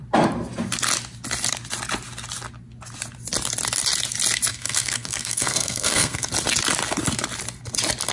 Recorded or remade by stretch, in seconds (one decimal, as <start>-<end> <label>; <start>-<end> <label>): 0.0-4.5 recorded; 4.5-6.3 remade; 6.3-8.1 recorded